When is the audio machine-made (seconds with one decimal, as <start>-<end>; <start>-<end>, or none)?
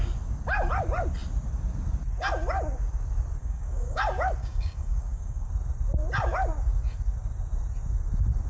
3.4-4.0; 4.4-5.5